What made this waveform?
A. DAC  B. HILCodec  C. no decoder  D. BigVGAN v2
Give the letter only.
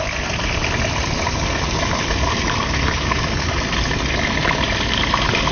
C